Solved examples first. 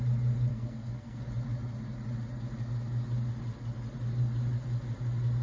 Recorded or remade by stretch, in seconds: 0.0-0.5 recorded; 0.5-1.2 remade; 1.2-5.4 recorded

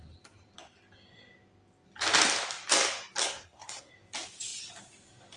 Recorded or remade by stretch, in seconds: 0.0-3.2 recorded; 3.2-3.9 remade; 3.9-5.4 recorded

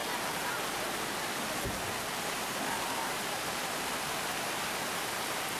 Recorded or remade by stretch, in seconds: 0.0-5.6 recorded

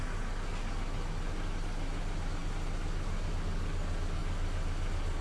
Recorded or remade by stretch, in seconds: 0.0-5.2 recorded

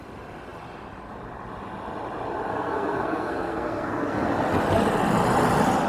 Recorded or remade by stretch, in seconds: 0.0-2.5 recorded; 2.5-4.3 remade; 4.3-5.9 recorded

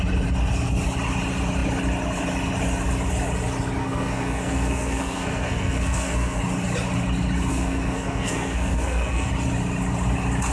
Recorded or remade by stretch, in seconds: 0.0-3.8 recorded; 3.8-6.4 remade; 6.4-7.5 recorded; 7.5-9.3 remade; 9.3-10.5 recorded

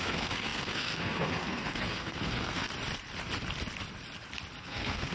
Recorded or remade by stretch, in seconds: 0.0-2.7 remade; 2.7-4.6 recorded; 4.6-5.1 remade

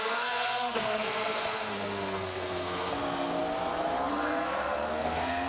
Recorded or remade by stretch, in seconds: 0.0-3.4 remade; 3.4-4.1 recorded; 4.1-5.5 remade